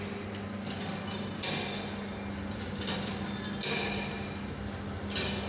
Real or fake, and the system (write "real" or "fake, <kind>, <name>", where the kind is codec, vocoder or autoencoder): real